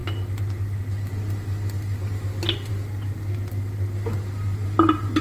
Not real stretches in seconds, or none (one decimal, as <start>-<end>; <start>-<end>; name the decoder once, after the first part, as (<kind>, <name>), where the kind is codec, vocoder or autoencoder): none